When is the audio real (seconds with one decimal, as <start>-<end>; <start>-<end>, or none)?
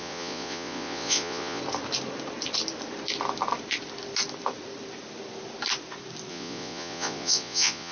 1.6-6.3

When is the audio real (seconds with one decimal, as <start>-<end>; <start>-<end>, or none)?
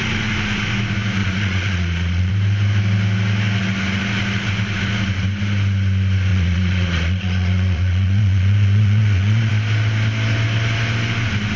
0.0-1.2; 2.3-6.3; 9.5-11.6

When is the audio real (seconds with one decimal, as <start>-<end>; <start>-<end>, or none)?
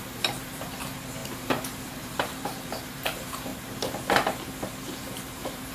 3.5-5.0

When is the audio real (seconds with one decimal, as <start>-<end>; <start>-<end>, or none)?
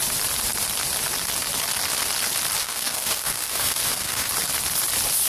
0.0-2.6; 4.3-5.3